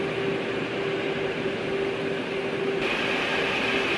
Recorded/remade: recorded